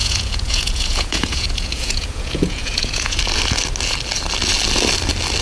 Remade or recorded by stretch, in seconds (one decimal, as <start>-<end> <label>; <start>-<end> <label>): 0.0-3.2 remade; 3.2-5.4 recorded